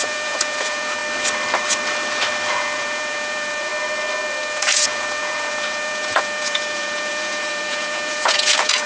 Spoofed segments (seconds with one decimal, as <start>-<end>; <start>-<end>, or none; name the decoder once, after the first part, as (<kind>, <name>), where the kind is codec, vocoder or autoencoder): 0.0-1.0 (vocoder, Vocos); 2.5-3.7; 4.4-8.9